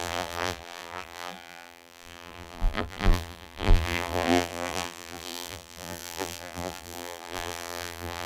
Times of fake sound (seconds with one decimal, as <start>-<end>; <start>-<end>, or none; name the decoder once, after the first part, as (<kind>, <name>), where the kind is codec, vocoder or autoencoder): 0.0-8.3 (vocoder, BigVGAN v2)